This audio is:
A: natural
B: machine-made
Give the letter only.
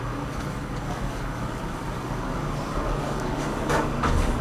B